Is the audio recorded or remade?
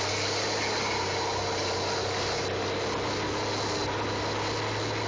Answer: recorded